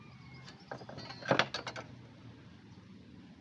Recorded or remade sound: recorded